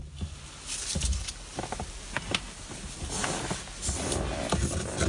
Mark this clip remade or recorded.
recorded